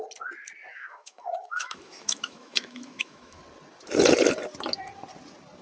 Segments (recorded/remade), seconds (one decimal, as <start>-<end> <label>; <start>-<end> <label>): 0.0-0.7 recorded; 0.7-3.4 remade; 3.4-5.6 recorded